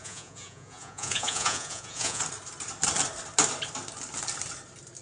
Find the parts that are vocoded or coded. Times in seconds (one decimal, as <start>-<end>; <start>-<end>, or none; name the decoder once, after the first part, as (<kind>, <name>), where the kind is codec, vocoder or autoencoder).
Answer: 0.0-2.2 (vocoder, Vocos)